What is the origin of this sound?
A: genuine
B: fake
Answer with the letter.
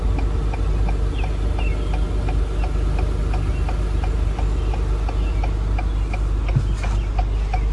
A